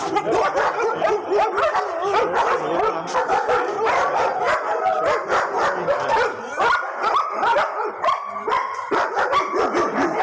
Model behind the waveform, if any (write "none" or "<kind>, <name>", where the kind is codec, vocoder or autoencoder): none